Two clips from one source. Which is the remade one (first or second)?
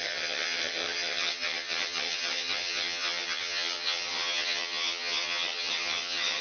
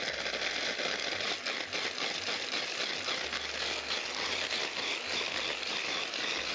first